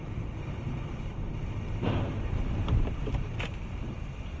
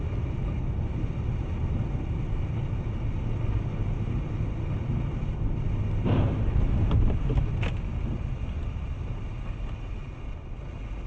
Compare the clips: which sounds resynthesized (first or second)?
first